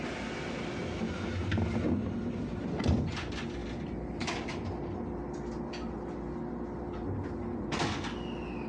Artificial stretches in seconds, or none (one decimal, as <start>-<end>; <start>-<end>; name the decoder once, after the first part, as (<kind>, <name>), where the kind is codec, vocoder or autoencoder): none